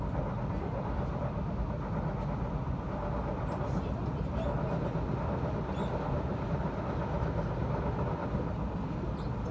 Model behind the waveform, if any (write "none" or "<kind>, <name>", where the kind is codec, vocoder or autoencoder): none